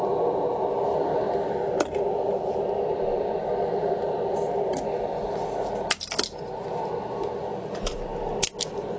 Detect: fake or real real